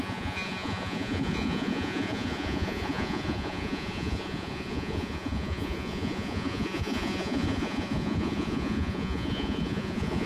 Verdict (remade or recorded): remade